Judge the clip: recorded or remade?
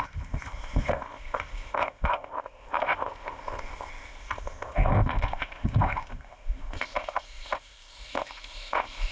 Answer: remade